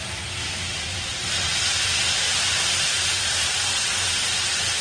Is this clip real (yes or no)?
yes